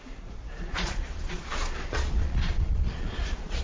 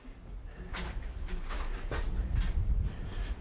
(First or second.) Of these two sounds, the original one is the second